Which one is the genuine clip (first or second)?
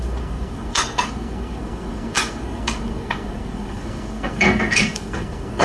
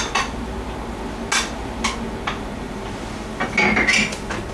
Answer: second